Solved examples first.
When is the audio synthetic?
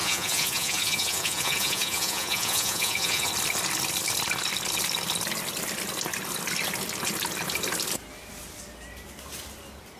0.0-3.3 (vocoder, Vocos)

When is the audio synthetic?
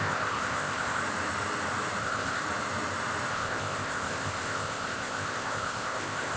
0.0-1.0 (codec, ZipCodec); 2.0-2.4; 3.3-6.4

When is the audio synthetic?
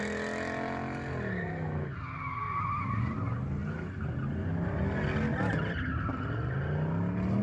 none